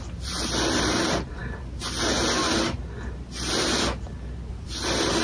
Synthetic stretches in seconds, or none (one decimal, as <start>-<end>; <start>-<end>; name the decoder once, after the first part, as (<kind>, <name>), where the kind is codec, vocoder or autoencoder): 0.0-1.4 (vocoder, BigVGAN v2); 4.5-5.2